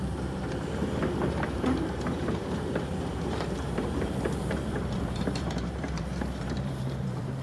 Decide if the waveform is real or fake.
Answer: fake